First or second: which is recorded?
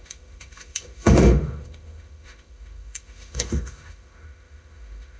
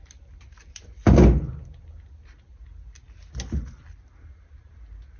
second